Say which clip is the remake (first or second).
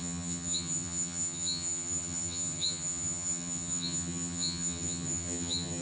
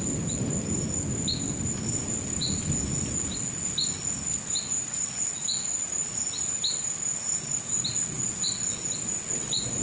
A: first